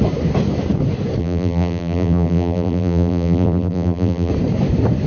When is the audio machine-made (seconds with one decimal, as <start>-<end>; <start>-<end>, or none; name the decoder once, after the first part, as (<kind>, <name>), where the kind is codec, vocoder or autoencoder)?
1.2-4.3 (vocoder, BigVGAN v2)